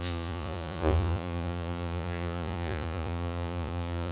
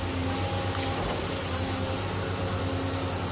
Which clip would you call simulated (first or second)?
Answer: first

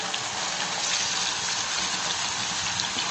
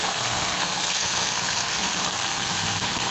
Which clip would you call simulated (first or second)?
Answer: second